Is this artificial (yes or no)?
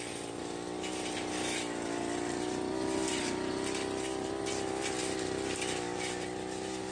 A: no